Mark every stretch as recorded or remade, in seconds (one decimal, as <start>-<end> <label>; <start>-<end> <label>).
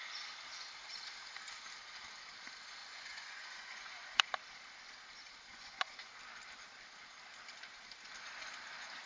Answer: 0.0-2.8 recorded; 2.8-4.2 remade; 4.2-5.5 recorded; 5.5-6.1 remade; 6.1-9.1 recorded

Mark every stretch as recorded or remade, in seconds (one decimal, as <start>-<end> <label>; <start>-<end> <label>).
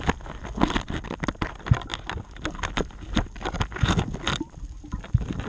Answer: 0.0-5.5 recorded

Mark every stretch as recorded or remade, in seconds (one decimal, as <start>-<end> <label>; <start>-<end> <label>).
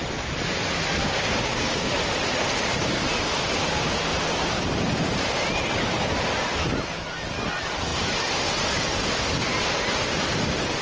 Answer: 0.0-1.0 recorded; 1.0-1.9 remade; 1.9-10.8 recorded